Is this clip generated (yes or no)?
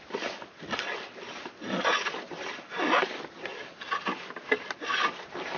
no